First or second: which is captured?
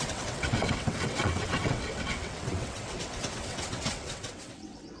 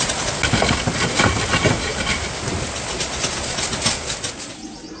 second